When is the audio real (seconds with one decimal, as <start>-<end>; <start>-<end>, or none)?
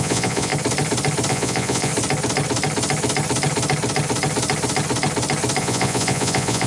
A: 0.5-1.3; 1.9-5.6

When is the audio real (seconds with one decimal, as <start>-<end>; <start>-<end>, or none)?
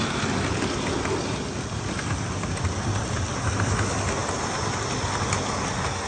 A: 0.0-6.1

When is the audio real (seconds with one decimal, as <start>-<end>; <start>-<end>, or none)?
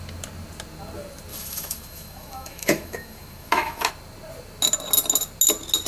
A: 0.0-1.3; 3.9-5.9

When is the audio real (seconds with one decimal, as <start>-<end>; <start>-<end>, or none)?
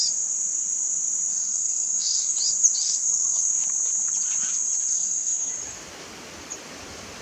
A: 0.0-1.3; 2.4-2.8; 3.5-4.9; 5.5-7.2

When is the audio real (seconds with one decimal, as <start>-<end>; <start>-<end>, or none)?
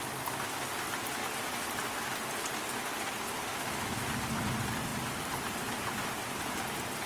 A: 0.0-3.5; 4.1-7.1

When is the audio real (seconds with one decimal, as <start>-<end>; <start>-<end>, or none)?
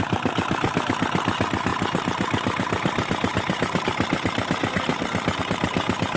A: 0.0-6.2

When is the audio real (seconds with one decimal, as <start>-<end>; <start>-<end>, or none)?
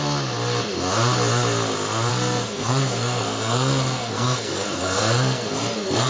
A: 0.0-2.1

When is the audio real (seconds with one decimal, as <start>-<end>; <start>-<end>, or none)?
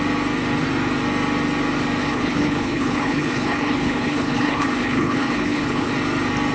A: 0.0-2.0; 5.9-6.5